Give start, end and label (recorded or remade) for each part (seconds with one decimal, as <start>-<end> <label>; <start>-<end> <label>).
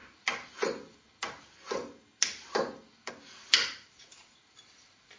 0.0-5.2 recorded